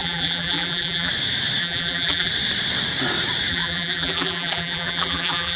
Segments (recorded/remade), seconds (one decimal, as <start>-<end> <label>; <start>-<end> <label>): 0.0-1.1 remade; 1.1-1.6 recorded; 1.6-2.3 remade; 2.3-3.5 recorded; 3.5-5.6 remade